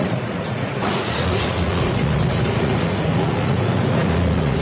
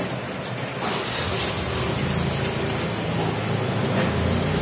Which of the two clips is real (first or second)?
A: second